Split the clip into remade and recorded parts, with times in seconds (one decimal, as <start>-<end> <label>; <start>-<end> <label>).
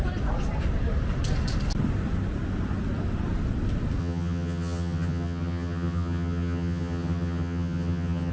0.0-4.0 recorded; 4.0-8.3 remade